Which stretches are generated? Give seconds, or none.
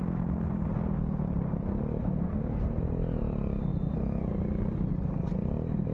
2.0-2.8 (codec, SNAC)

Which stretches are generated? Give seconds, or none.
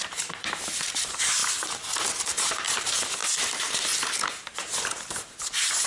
0.0-1.4 (vocoder, BigVGAN v2); 2.2-3.2; 4.3-5.9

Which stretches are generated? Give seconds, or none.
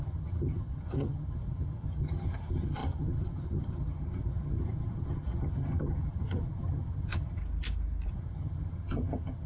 0.0-7.4 (vocoder, HiFi-GAN); 8.1-9.5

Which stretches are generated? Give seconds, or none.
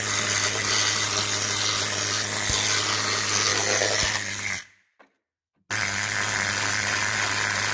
none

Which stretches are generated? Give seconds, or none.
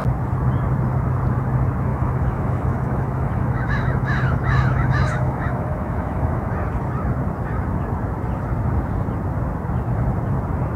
1.9-6.5 (autoencoder, DAC-VAE)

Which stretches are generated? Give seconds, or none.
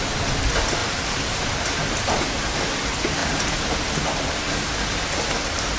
0.8-1.5 (vocoder, BigVGAN v2); 3.2-4.0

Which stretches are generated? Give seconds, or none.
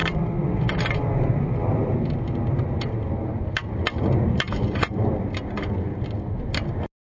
none